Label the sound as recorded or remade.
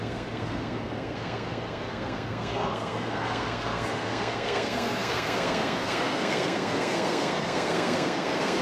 remade